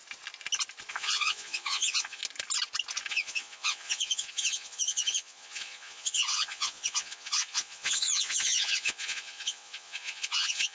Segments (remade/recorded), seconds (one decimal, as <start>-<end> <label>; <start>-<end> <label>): 0.0-0.9 recorded; 0.9-2.2 remade; 2.2-3.1 recorded; 3.1-10.7 remade